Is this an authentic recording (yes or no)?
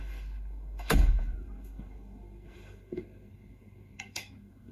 no